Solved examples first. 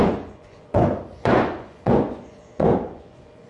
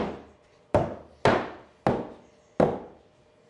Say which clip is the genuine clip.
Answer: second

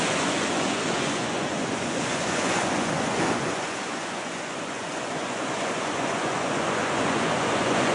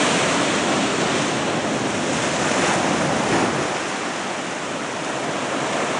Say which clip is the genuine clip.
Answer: second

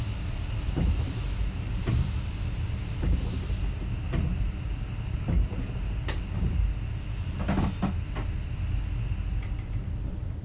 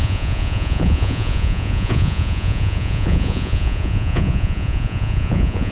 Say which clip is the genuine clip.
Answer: first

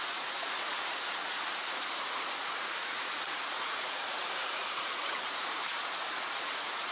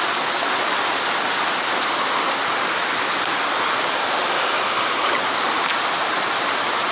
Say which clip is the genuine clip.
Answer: second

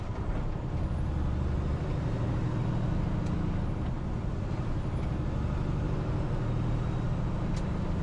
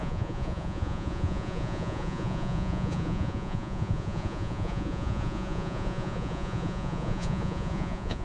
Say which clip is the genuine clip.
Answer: first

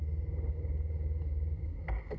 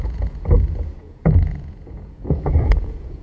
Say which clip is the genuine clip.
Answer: first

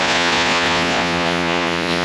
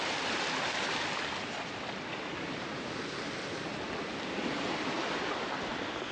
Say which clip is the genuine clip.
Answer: second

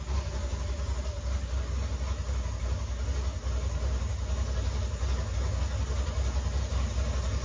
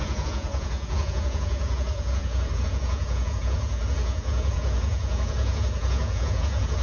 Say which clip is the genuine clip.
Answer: first